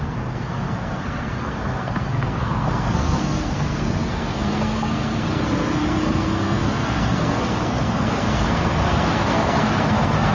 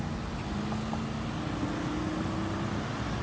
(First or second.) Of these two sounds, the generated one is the first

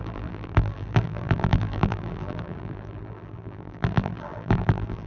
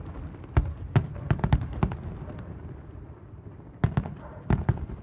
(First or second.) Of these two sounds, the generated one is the first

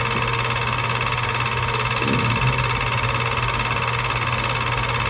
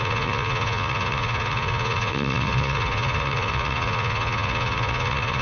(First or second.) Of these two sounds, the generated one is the second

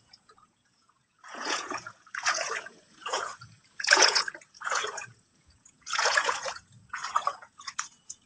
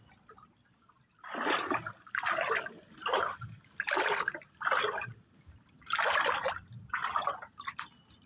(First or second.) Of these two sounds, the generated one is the first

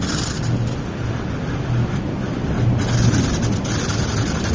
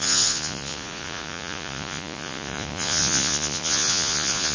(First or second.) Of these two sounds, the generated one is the second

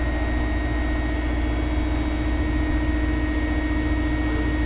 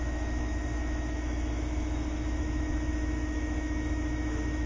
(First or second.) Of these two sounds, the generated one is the second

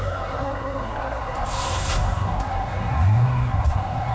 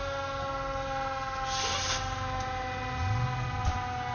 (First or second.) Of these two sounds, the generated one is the first